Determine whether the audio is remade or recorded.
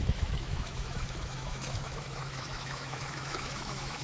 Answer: remade